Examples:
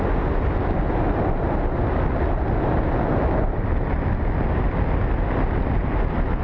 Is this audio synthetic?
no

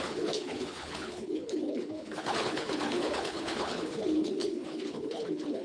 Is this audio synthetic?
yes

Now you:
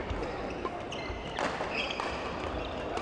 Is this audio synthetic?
no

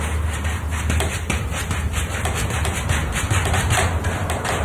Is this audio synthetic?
no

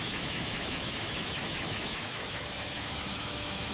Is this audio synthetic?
yes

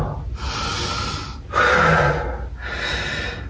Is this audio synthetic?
no